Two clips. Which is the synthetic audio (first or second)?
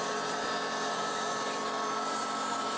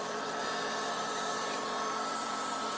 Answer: second